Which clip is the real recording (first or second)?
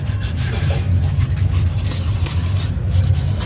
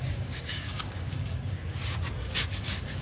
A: first